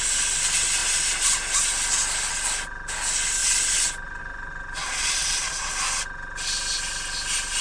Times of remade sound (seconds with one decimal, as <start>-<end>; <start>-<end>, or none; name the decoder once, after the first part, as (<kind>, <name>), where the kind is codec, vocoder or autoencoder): 4.8-5.7 (vocoder, Vocos)